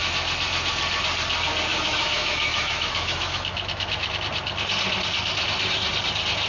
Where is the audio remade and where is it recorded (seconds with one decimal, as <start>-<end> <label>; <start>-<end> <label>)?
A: 0.0-1.7 recorded; 1.7-4.1 remade; 4.1-6.5 recorded